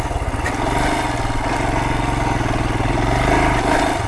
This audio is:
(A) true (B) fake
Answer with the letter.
A